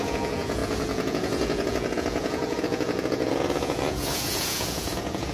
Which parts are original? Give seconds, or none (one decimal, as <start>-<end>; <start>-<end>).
none